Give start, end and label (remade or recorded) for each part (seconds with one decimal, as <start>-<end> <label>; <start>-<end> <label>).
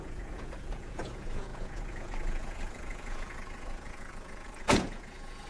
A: 0.0-5.5 remade